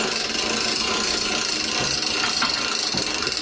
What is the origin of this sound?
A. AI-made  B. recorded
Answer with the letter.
B